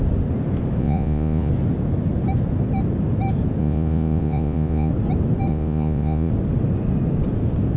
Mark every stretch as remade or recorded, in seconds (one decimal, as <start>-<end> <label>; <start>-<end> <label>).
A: 0.0-0.8 recorded; 0.8-1.5 remade; 1.5-3.6 recorded; 3.6-4.9 remade; 4.9-5.5 recorded; 5.5-6.3 remade; 6.3-7.8 recorded